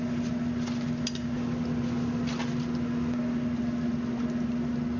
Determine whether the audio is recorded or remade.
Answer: recorded